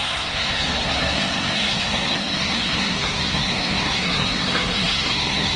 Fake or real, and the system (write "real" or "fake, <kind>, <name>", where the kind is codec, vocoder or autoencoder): fake, codec, SNAC